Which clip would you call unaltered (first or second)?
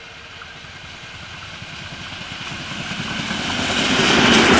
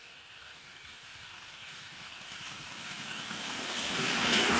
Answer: first